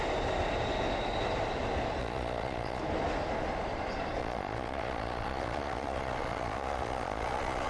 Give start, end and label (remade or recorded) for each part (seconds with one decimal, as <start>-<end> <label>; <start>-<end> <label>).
0.0-2.0 recorded; 2.0-2.8 remade; 2.8-4.2 recorded; 4.2-7.7 remade